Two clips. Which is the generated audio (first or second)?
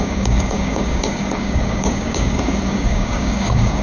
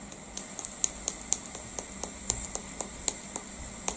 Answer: first